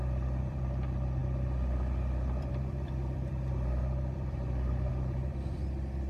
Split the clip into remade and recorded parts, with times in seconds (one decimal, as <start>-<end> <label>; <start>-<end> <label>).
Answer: 0.0-6.1 remade